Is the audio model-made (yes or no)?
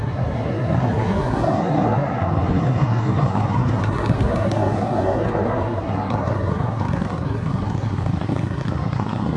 yes